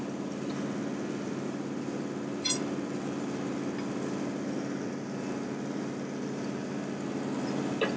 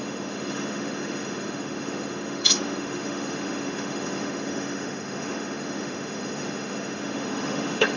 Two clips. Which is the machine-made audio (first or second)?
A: second